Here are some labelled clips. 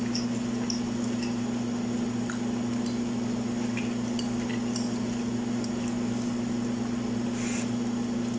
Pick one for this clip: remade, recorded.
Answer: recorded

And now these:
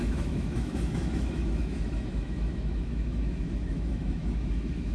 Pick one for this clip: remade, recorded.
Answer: remade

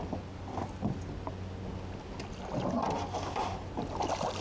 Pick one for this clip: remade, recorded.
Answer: recorded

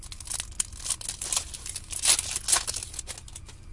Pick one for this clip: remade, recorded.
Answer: recorded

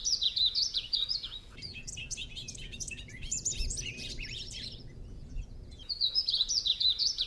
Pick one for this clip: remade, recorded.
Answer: remade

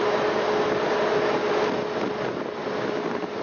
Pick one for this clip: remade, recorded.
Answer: recorded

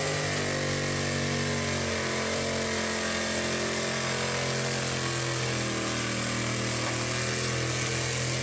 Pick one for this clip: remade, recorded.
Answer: recorded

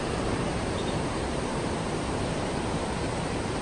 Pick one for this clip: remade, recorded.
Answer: remade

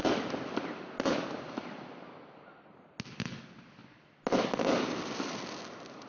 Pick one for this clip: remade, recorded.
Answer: recorded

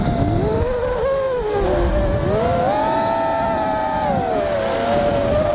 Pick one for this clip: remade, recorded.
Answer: recorded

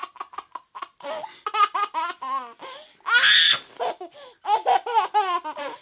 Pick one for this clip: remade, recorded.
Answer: recorded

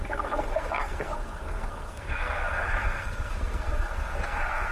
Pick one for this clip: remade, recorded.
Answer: remade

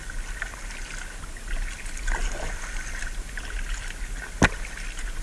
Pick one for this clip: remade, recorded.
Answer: recorded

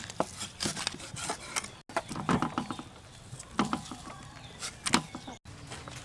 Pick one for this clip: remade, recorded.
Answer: recorded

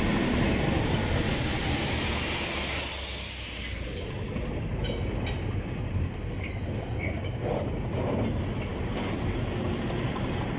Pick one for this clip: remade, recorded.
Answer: recorded